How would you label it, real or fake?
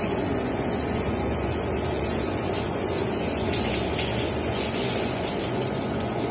fake